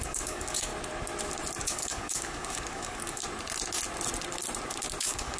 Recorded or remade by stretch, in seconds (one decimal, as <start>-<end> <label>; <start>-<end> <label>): 0.0-0.7 remade; 0.7-1.6 recorded; 1.6-3.2 remade; 3.2-5.0 recorded; 5.0-5.4 remade